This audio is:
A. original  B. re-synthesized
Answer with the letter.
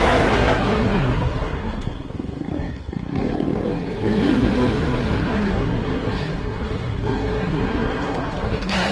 B